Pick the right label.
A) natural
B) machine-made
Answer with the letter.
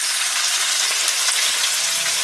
A